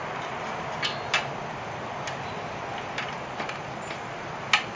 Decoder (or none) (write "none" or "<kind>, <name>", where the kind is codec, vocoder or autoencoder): none